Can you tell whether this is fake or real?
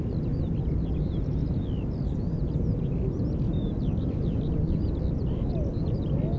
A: real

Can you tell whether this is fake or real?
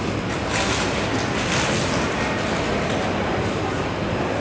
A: real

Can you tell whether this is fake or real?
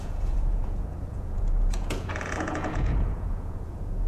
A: fake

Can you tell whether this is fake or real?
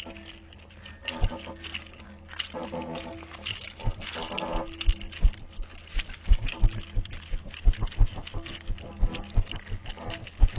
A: real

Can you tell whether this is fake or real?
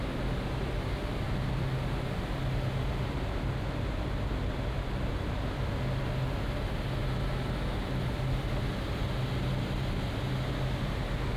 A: real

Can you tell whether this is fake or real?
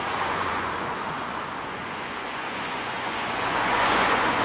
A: fake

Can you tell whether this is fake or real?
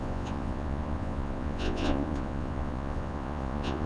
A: fake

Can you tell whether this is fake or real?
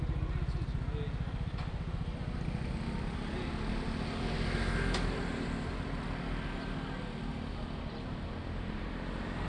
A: real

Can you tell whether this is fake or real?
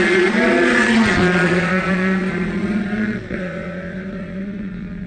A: fake